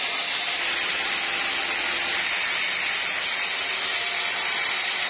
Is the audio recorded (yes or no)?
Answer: yes